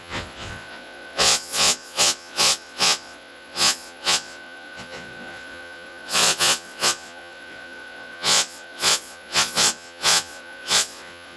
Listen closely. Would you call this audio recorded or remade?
remade